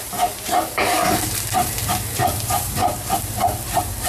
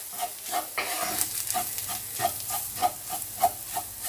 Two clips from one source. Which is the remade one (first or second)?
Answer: first